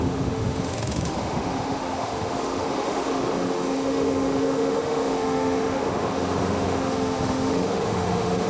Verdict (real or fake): fake